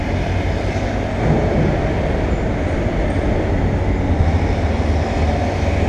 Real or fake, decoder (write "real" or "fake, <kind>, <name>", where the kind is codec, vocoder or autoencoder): real